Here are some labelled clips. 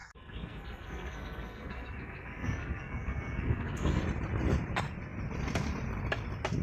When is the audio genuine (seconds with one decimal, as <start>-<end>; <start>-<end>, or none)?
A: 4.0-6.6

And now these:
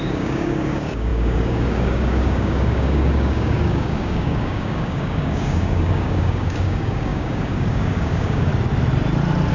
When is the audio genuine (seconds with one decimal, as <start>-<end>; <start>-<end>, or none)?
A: 8.5-9.5

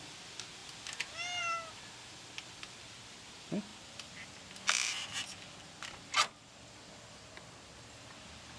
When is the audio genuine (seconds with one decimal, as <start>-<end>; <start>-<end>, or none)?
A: 0.0-8.6

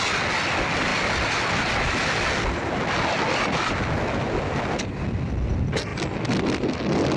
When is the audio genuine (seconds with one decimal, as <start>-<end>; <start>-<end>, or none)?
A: 0.0-7.2

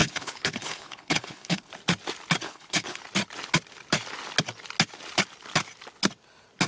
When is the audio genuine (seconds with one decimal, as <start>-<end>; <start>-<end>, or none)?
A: 1.7-2.4; 3.0-6.7